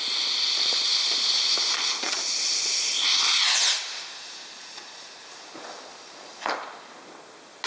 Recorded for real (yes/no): yes